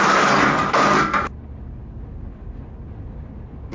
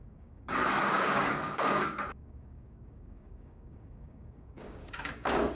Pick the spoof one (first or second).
second